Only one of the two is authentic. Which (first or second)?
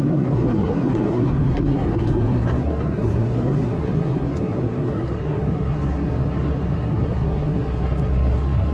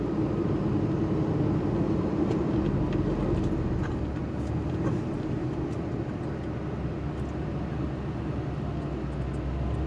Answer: second